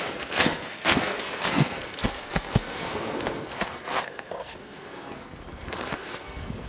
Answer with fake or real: fake